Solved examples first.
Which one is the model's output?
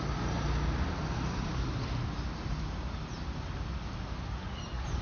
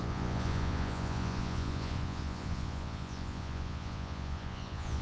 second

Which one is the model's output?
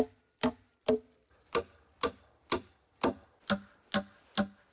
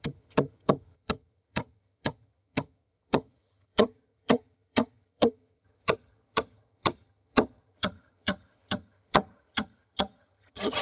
second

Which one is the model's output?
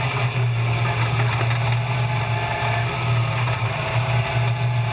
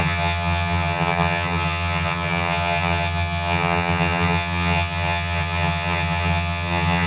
second